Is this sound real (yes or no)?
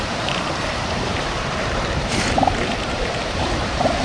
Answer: no